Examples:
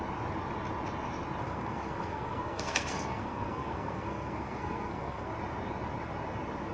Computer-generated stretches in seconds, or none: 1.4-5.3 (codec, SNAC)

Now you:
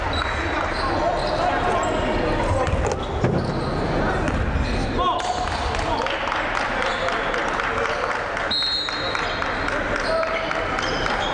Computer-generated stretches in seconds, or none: none

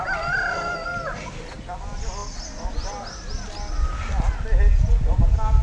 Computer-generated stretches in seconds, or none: none

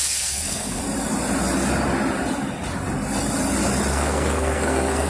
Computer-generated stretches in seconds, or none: 0.0-0.8 (codec, SNAC); 3.9-5.1

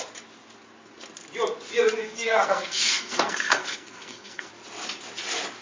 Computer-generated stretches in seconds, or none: 2.0-4.5 (codec, SNAC)